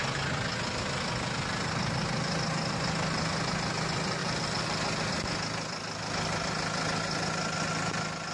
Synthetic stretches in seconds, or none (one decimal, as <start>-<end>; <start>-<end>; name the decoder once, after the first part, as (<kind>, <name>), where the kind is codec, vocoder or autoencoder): 4.2-5.1 (vocoder, BigVGAN v2)